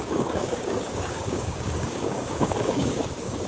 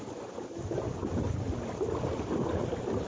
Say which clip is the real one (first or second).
second